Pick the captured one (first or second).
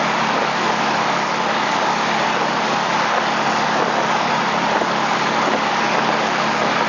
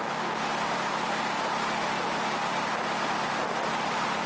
second